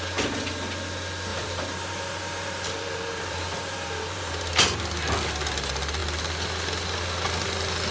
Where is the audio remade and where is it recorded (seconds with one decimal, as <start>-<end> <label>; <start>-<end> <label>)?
0.0-1.3 recorded; 1.3-4.6 remade; 4.6-7.9 recorded